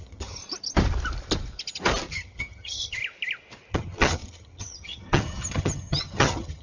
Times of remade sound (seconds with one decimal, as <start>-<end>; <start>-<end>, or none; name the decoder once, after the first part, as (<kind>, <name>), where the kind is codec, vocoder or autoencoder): 0.0-0.4 (vocoder, HiFi-GAN); 2.1-3.0; 3.7-6.6